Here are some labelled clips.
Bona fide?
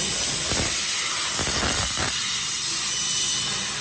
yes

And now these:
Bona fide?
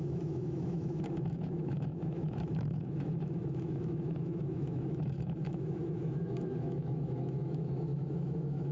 no